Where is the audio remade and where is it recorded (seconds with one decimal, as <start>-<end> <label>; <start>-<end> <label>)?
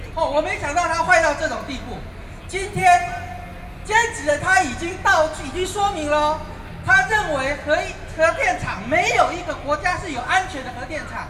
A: 0.0-11.3 recorded